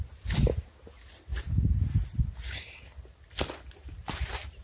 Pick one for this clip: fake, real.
real